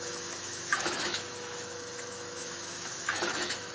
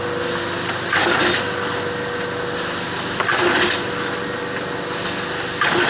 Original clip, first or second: second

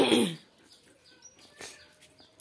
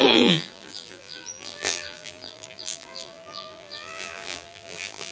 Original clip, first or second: first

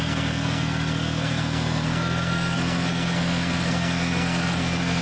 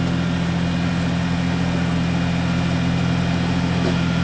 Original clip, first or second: second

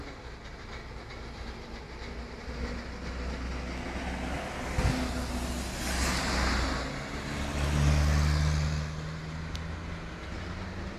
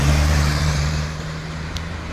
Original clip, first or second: first